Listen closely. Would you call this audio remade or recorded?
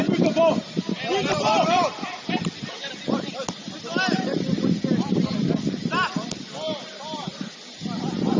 recorded